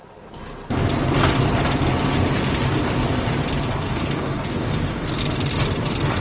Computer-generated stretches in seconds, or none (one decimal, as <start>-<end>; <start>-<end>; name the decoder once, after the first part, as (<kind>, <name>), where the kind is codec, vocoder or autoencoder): 3.7-5.2 (codec, DAC)